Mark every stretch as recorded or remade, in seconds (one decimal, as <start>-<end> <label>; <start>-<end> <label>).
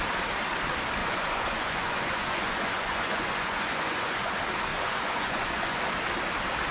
0.0-1.0 recorded; 1.0-4.3 remade; 4.3-4.7 recorded; 4.7-5.8 remade; 5.8-6.7 recorded